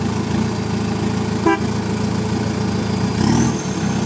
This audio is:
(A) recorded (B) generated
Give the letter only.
A